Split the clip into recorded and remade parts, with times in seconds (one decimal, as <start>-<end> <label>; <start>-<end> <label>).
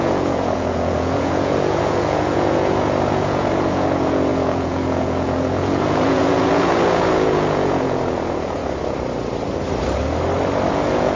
0.0-8.6 remade; 8.6-10.7 recorded; 10.7-11.2 remade